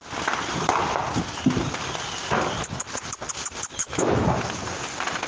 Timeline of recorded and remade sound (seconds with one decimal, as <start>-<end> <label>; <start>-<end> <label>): 0.0-3.8 recorded; 3.8-4.3 remade; 4.3-5.3 recorded